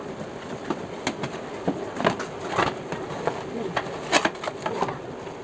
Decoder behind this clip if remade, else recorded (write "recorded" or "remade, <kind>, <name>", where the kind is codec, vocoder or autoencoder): recorded